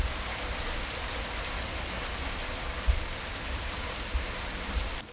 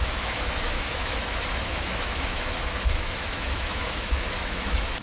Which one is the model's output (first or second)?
second